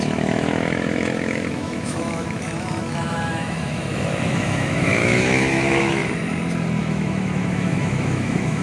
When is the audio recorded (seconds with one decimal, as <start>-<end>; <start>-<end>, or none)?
6.0-6.8